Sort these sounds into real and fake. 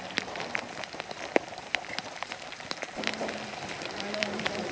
real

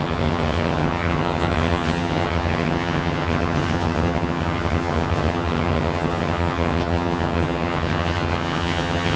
fake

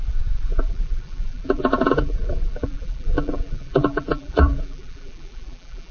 fake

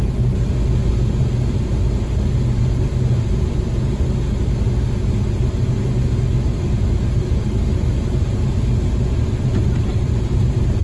real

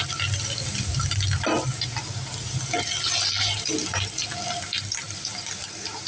real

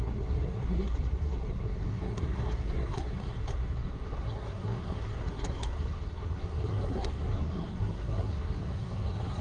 fake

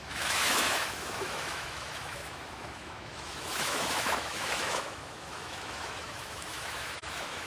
fake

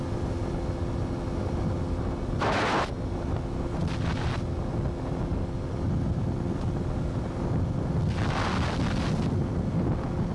real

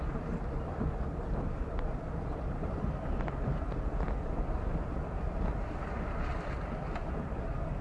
real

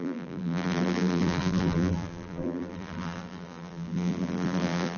fake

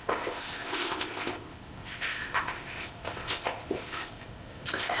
fake